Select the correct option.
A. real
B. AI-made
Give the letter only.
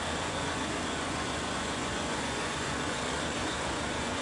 B